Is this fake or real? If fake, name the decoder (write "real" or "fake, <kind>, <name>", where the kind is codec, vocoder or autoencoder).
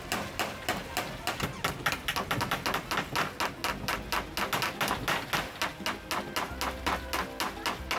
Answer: real